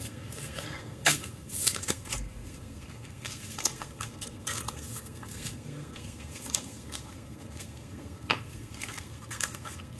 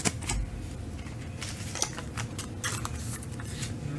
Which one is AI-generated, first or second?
first